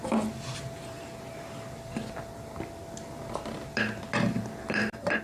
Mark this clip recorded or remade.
remade